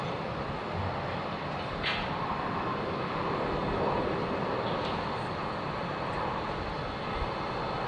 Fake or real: real